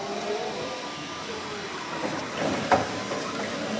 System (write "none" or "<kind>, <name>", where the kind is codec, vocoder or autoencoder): none